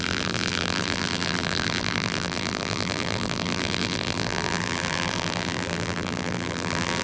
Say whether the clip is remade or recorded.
remade